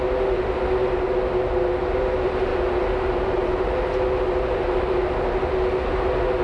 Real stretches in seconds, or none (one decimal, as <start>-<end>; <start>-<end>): 0.0-6.4